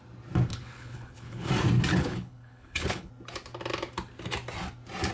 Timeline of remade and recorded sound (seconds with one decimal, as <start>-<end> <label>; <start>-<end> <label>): 0.0-0.5 recorded; 0.5-1.5 remade; 1.5-2.0 recorded; 2.0-3.1 remade; 3.1-5.1 recorded

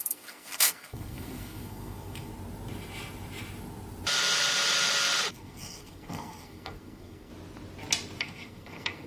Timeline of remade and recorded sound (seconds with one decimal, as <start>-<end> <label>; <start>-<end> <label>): 0.0-2.3 remade; 2.3-5.3 recorded; 5.3-7.3 remade; 7.3-8.2 recorded; 8.2-9.1 remade

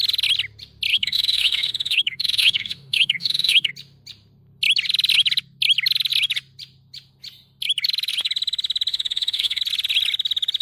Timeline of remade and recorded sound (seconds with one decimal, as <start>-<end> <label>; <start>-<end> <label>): 0.0-0.9 recorded; 0.9-3.7 remade; 3.7-8.9 recorded; 8.9-9.6 remade; 9.6-10.6 recorded

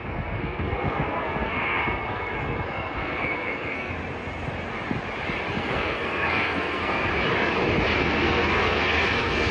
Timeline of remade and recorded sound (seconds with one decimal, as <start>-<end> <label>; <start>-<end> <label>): 0.0-3.9 remade; 3.9-5.6 recorded; 5.6-7.1 remade; 7.1-8.0 recorded; 8.0-9.5 remade

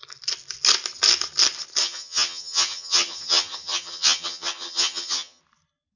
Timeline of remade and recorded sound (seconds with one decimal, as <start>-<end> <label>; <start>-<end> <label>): 0.0-1.8 recorded; 1.8-5.4 remade; 5.4-6.0 recorded